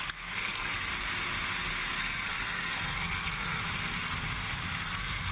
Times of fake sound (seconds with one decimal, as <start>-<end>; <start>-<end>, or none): 0.0-0.9; 2.0-3.6; 4.8-5.3